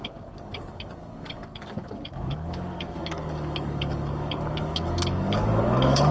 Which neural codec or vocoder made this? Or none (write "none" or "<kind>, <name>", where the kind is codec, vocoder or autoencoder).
codec, DAC